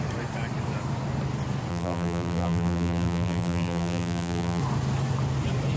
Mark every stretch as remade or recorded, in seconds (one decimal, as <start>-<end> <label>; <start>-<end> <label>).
0.0-1.7 recorded; 1.7-4.6 remade; 4.6-5.8 recorded